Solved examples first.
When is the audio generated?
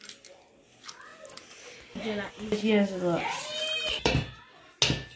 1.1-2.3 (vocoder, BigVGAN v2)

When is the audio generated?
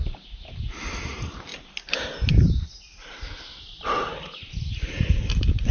0.0-1.5 (vocoder, BigVGAN v2); 4.9-5.7